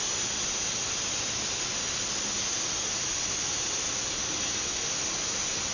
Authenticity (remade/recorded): recorded